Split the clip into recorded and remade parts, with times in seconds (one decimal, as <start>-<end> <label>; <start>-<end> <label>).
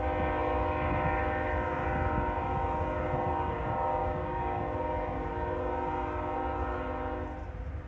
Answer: 0.0-4.0 recorded; 4.0-4.6 remade; 4.6-7.9 recorded